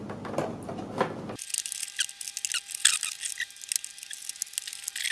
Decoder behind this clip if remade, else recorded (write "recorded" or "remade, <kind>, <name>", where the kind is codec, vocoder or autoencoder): recorded